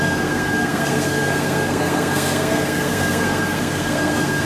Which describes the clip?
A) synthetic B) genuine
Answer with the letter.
A